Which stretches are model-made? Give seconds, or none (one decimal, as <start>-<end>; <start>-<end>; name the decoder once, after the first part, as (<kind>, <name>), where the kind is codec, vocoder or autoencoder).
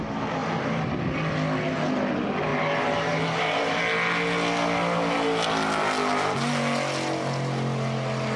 2.5-3.8 (vocoder, BigVGAN v2)